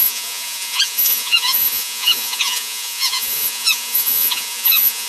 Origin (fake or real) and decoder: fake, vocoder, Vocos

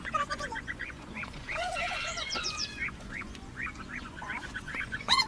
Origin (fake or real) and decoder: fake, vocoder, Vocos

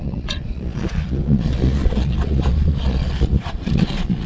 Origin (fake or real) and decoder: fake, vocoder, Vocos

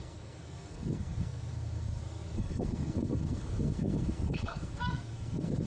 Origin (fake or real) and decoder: fake, codec, SNAC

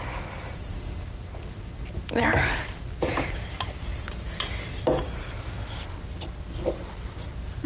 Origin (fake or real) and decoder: real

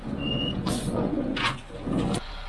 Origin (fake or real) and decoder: fake, vocoder, Vocos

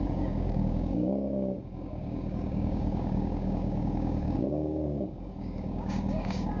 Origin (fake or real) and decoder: fake, codec, DAC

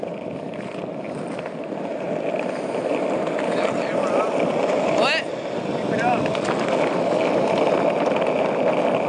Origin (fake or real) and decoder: real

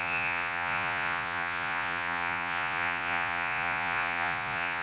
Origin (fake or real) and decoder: fake, vocoder, Vocos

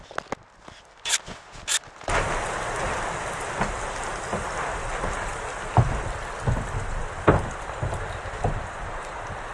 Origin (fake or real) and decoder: real